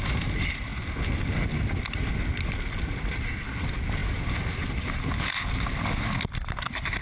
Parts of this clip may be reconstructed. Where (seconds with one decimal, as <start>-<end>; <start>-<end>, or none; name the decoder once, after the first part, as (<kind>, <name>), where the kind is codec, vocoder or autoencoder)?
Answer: none